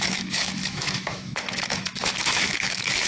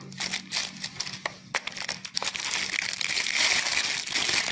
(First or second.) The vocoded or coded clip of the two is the first